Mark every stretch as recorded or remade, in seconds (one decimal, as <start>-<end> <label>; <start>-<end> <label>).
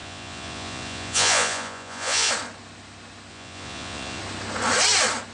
0.0-2.3 remade; 2.3-3.3 recorded; 3.3-4.2 remade; 4.2-5.3 recorded